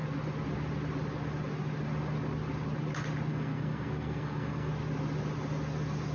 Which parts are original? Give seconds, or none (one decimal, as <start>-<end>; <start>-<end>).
0.0-3.3; 4.7-6.1